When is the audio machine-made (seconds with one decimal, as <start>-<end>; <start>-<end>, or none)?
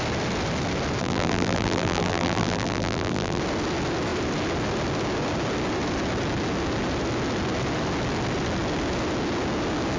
1.0-3.4